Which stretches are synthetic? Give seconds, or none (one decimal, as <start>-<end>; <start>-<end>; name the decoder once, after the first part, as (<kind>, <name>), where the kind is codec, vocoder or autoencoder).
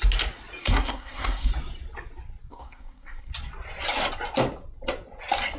0.6-1.5 (codec, SNAC); 2.5-3.3